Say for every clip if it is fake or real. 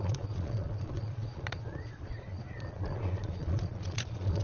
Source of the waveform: fake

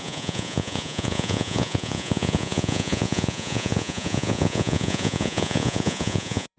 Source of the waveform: fake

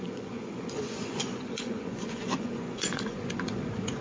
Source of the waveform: fake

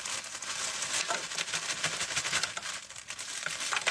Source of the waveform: real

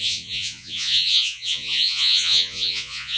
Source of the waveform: fake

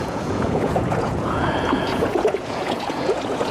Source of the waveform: fake